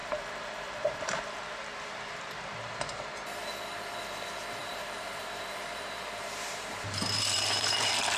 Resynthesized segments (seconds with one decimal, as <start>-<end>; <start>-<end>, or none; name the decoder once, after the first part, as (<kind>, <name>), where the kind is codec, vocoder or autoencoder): 0.0-3.1 (vocoder, BigVGAN v2); 4.6-8.2